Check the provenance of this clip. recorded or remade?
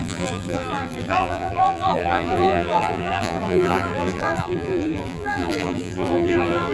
remade